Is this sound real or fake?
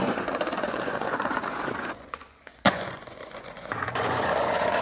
fake